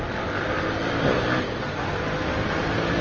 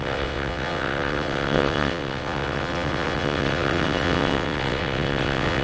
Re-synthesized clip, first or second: second